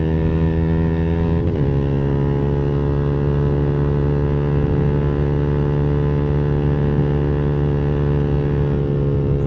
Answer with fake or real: real